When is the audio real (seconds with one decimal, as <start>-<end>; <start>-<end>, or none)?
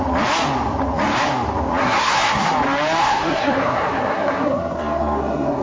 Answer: 0.0-1.8; 2.5-3.0